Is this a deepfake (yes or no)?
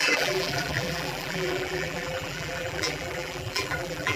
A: yes